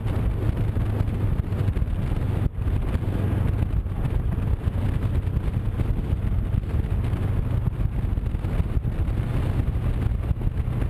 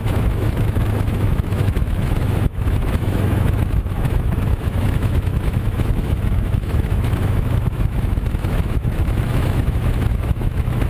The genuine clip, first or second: first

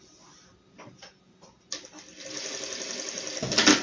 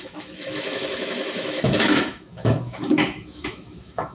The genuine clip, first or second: first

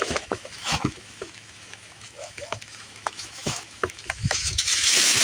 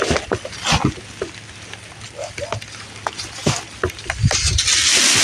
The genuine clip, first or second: second